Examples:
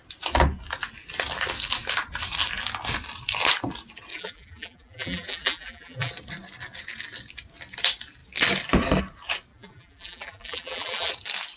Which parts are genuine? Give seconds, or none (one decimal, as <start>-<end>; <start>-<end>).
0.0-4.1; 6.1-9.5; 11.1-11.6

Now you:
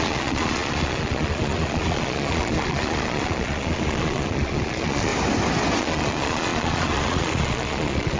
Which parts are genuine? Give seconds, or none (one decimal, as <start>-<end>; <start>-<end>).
5.1-5.8

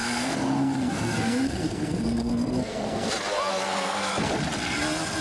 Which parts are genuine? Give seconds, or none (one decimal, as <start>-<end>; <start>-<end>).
3.1-3.5; 4.3-5.2

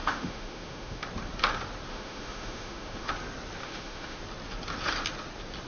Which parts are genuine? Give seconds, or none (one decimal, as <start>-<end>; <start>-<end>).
1.0-1.9; 3.1-3.6; 4.2-5.7